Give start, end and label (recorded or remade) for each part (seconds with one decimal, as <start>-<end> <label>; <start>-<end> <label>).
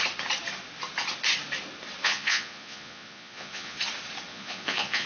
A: 0.0-2.0 recorded; 2.0-3.8 remade; 3.8-4.3 recorded; 4.3-5.1 remade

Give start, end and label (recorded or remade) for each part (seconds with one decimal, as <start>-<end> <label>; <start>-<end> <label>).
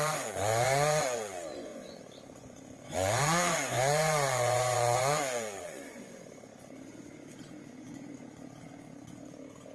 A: 0.0-9.7 remade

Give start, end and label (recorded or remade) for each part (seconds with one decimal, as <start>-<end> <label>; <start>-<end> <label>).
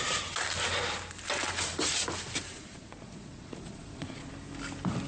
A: 0.0-2.5 recorded; 2.5-4.3 remade; 4.3-5.1 recorded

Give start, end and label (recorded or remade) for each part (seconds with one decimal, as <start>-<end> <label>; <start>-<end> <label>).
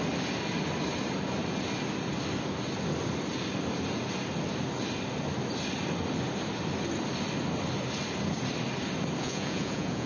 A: 0.0-9.2 recorded; 9.2-10.1 remade